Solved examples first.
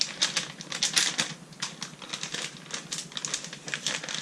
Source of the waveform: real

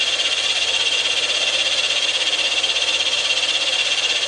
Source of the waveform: real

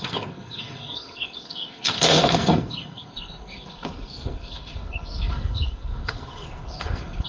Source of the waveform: fake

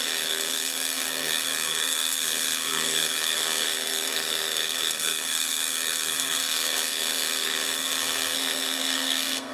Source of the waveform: fake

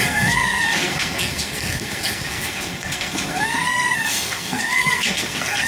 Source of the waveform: fake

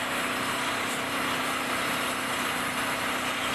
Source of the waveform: real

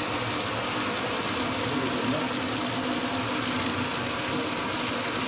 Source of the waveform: real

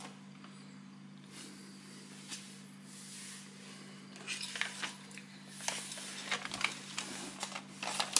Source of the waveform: real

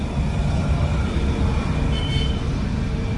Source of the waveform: real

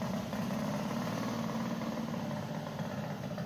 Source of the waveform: real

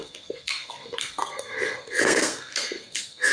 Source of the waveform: fake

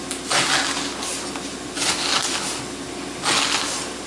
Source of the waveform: real